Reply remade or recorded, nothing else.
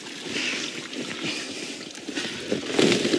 recorded